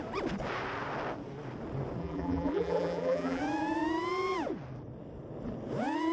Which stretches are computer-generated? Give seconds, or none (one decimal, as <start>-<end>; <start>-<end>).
2.0-3.4